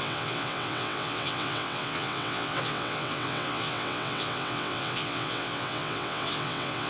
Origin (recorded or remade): remade